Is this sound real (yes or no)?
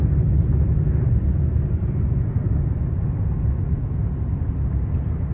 yes